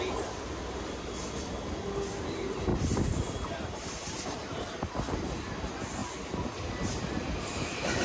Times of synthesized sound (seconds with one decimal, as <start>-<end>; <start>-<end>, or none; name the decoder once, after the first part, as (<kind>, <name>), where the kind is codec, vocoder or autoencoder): 2.7-4.9 (vocoder, BigVGAN v2)